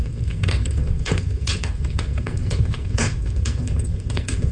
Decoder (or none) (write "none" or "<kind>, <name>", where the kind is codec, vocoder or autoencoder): codec, SNAC